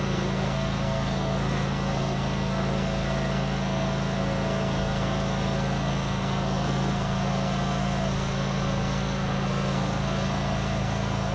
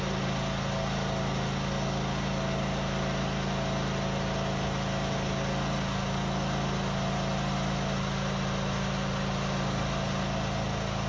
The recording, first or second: second